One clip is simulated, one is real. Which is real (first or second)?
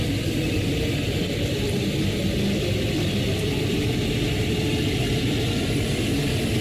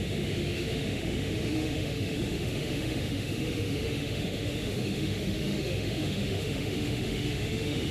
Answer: first